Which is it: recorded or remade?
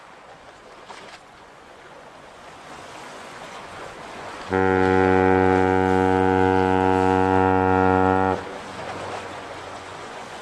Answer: remade